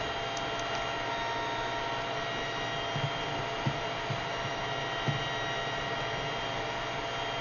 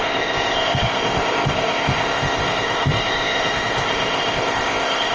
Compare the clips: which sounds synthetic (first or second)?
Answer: second